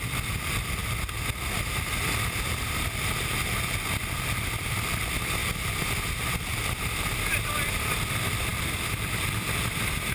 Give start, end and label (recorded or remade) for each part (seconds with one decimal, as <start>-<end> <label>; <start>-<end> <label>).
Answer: 0.0-0.8 remade; 0.8-3.0 recorded; 3.0-5.4 remade; 5.4-7.3 recorded; 7.3-10.1 remade